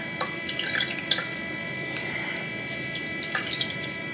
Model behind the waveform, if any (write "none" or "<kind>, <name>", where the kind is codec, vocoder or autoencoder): vocoder, BigVGAN v2